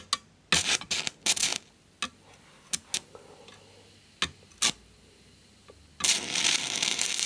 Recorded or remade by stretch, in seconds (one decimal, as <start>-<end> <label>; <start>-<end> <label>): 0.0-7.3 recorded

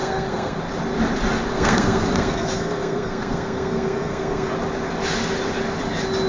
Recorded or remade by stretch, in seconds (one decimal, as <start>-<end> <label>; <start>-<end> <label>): 0.0-0.6 remade; 0.6-1.5 recorded; 1.5-4.5 remade; 4.5-6.3 recorded

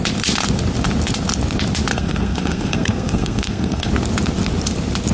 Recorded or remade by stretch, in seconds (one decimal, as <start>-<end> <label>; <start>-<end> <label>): 0.0-1.9 recorded; 1.9-3.9 remade; 3.9-5.1 recorded

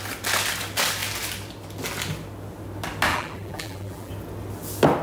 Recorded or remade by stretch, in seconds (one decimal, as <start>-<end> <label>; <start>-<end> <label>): 0.0-3.1 recorded; 3.1-4.1 remade; 4.1-5.0 recorded

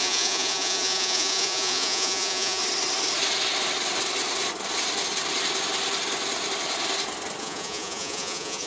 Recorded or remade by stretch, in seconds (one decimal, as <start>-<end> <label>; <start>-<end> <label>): 0.0-2.6 remade; 2.6-7.4 recorded; 7.4-8.7 remade